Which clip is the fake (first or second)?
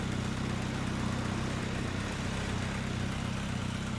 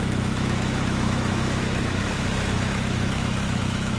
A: second